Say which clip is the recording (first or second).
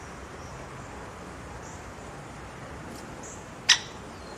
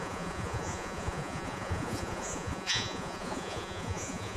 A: first